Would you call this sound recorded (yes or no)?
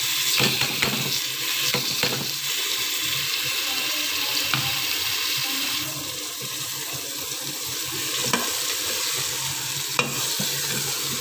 yes